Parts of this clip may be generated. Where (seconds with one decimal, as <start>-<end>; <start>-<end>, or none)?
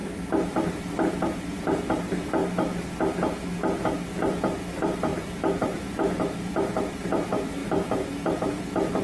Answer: 0.0-2.4; 4.2-5.1; 5.6-9.0